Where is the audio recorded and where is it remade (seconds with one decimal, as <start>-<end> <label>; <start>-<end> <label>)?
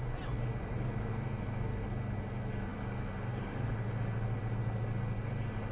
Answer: 0.0-5.7 recorded